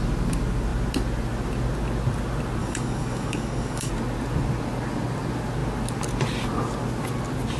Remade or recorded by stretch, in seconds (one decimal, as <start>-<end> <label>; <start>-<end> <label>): 0.0-2.6 recorded; 2.6-3.9 remade; 3.9-7.6 recorded

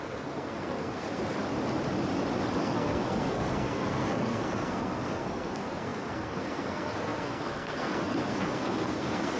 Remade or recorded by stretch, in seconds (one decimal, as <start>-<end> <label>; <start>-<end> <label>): 0.0-1.2 remade; 1.2-2.6 recorded; 2.6-9.4 remade

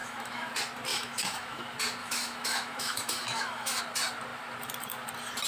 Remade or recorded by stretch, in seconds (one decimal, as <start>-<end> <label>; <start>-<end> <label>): 0.0-0.5 remade; 0.5-0.9 recorded; 0.9-1.6 remade; 1.6-2.0 recorded; 2.0-3.8 remade; 3.8-5.5 recorded

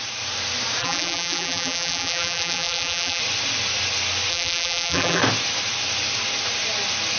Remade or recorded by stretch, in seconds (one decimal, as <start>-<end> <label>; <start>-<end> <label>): 0.0-0.8 recorded; 0.8-3.2 remade; 3.2-4.3 recorded; 4.3-5.2 remade; 5.2-7.2 recorded

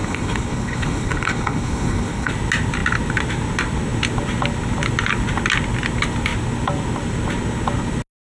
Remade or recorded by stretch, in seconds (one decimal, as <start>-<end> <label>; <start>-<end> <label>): 0.0-2.3 remade; 2.3-8.3 recorded

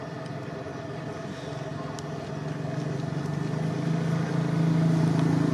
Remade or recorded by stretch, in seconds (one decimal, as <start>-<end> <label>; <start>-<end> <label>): 0.0-5.5 recorded